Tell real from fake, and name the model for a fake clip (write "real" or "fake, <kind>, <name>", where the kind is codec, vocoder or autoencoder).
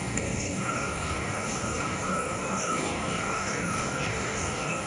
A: fake, codec, DAC